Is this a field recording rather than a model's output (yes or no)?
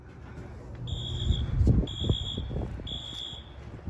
yes